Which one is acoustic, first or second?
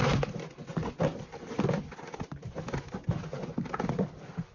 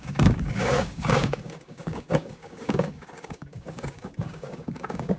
first